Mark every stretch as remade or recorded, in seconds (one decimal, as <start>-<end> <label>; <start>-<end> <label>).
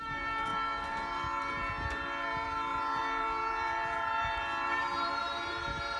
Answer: 0.0-6.0 remade